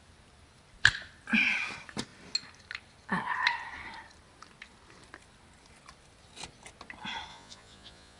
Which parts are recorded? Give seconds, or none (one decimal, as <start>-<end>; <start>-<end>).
0.0-7.3